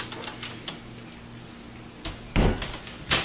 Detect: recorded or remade recorded